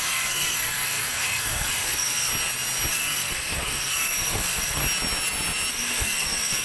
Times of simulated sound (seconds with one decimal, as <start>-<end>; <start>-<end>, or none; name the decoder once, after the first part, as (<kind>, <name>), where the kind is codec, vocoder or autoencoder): 0.0-2.3 (codec, SNAC); 2.9-4.8; 5.7-6.6